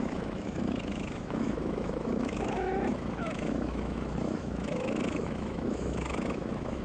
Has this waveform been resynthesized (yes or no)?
yes